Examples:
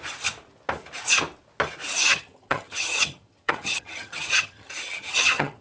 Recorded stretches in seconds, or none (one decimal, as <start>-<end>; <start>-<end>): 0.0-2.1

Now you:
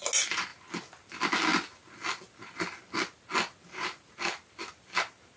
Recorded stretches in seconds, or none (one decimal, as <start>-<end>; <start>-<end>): 0.0-5.4

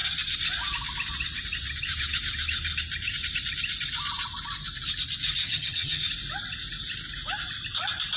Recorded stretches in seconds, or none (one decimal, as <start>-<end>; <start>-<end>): 0.0-5.4; 6.0-8.2

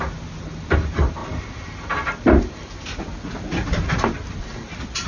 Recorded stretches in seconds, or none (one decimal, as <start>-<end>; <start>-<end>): 0.0-5.1

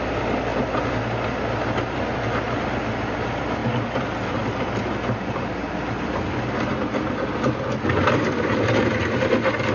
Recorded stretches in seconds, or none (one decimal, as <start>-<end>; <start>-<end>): 0.0-9.7

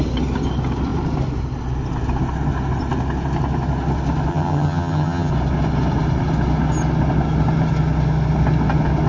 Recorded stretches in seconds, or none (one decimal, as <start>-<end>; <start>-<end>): 0.0-4.3; 5.3-9.1

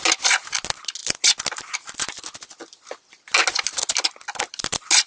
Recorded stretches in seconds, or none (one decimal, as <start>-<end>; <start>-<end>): 0.0-5.1